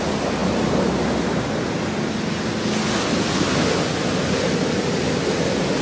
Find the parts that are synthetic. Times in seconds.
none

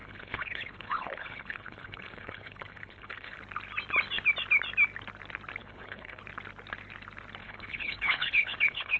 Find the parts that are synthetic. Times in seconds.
0.0-3.4 (codec, HILCodec); 5.6-6.2; 7.4-9.0

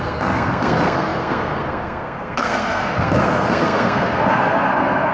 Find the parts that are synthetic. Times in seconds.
0.0-5.1 (codec, SNAC)

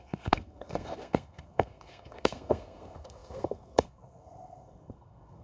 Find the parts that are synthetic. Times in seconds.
0.0-5.4 (codec, SNAC)